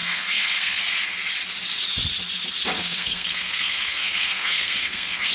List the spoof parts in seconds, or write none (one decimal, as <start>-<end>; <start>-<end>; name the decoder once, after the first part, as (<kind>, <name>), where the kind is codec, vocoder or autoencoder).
0.0-0.8 (codec, SNAC); 2.8-5.3